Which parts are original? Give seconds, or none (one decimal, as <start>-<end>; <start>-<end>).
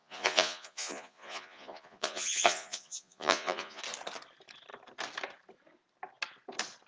3.8-6.9